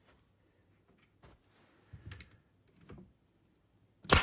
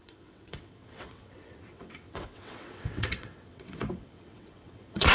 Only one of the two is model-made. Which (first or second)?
second